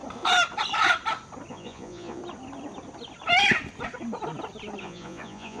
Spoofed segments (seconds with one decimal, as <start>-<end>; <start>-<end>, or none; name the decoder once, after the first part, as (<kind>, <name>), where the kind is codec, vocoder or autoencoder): 1.5-2.2 (vocoder, Vocos); 4.8-5.6